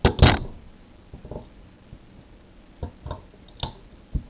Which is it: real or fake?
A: real